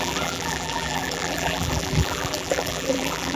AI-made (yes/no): yes